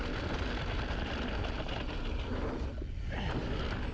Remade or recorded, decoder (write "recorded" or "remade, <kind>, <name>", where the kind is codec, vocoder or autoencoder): recorded